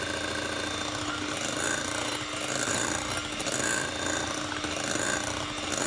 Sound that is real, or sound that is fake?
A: real